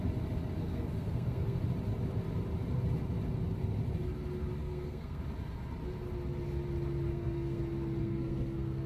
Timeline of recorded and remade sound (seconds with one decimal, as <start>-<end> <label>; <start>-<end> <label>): 0.0-0.6 recorded; 0.6-1.6 remade; 1.6-4.6 recorded; 4.6-5.2 remade; 5.2-7.1 recorded; 7.1-7.6 remade; 7.6-8.0 recorded; 8.0-8.9 remade